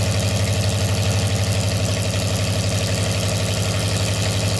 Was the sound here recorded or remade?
recorded